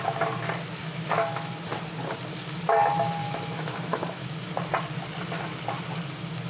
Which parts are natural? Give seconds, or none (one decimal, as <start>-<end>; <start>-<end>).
0.0-0.8; 1.6-3.2; 4.5-6.5